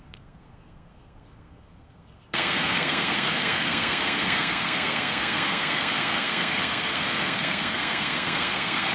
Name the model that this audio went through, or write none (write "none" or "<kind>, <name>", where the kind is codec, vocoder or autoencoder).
codec, SNAC